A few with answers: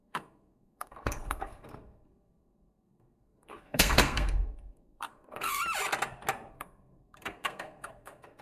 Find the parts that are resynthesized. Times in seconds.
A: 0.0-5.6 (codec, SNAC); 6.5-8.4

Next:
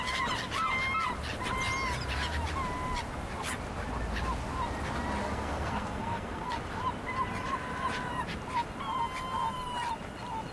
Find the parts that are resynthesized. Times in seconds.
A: 5.2-6.6 (codec, SNAC)